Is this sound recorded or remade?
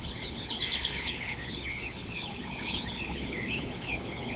remade